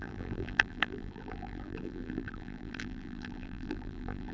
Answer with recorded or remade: remade